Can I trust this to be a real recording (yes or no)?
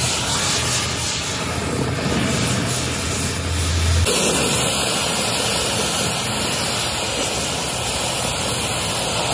yes